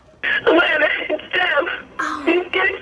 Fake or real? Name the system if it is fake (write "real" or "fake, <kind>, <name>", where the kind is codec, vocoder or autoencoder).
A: real